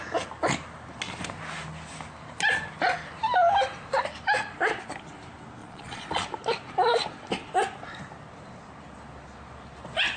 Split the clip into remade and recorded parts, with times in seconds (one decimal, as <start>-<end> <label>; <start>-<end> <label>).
0.0-5.6 recorded; 5.6-6.2 remade; 6.2-10.2 recorded